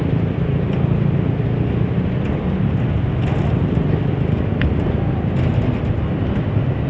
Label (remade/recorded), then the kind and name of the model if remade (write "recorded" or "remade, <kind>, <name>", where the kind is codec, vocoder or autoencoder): recorded